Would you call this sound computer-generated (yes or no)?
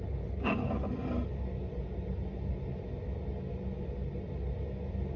no